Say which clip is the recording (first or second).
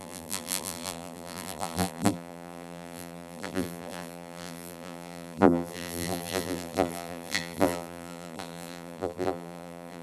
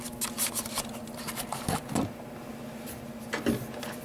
second